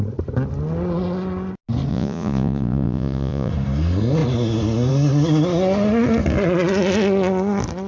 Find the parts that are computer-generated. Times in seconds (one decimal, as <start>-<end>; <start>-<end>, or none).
1.9-3.5